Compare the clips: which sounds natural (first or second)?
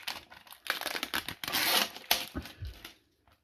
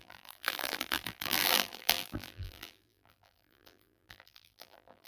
first